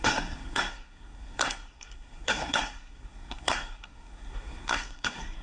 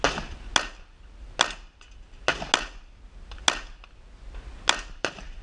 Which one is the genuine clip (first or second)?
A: second